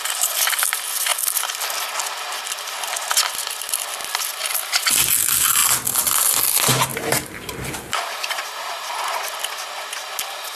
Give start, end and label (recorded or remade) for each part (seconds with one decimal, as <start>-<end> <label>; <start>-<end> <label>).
0.0-6.9 recorded; 6.9-8.9 remade; 8.9-10.6 recorded